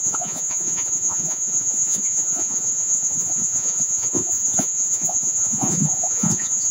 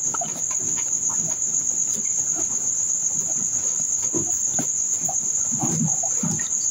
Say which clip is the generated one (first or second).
first